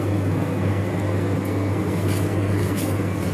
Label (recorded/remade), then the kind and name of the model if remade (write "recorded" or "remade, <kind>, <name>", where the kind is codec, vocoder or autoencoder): remade, codec, SNAC